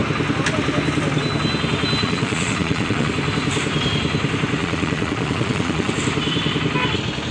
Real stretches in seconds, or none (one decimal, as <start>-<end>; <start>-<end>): 0.0-2.0; 3.1-4.6; 5.9-7.3